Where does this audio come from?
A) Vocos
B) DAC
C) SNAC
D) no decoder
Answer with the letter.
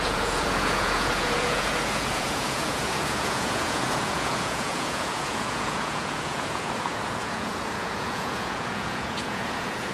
A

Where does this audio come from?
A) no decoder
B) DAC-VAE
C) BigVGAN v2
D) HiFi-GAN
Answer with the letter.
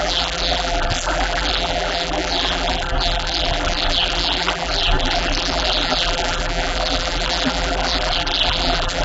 C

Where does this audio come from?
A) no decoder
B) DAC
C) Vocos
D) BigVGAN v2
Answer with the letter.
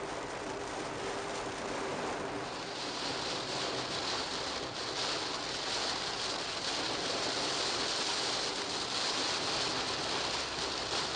A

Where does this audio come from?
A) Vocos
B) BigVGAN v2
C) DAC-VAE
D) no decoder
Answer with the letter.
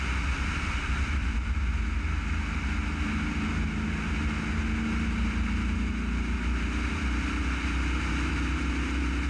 D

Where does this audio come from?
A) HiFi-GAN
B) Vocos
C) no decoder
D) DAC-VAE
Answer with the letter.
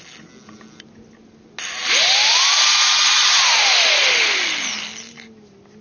C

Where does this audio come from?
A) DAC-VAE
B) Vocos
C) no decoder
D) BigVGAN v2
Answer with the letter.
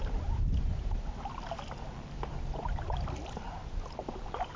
C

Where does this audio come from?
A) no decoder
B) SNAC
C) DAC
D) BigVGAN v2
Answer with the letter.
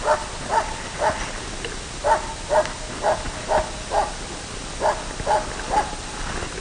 A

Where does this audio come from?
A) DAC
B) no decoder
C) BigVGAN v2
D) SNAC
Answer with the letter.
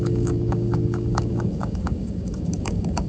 A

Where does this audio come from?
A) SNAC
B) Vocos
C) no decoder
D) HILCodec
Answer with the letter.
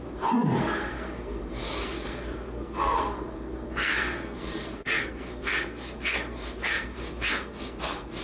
A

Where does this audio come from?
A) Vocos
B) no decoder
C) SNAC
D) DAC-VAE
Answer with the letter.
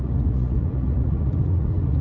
A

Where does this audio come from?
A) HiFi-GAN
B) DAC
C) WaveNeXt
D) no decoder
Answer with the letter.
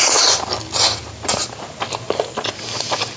D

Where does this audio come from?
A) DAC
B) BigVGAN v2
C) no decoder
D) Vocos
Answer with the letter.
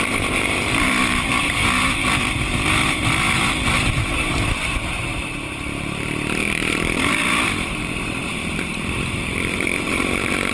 B